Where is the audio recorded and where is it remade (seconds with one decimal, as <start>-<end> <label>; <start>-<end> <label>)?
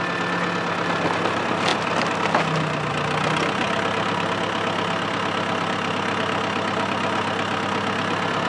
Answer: 0.0-8.5 recorded